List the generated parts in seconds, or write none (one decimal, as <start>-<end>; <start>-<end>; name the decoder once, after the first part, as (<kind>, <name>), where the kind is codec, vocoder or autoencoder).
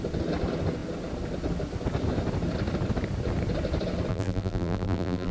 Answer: 4.1-5.3 (vocoder, BigVGAN v2)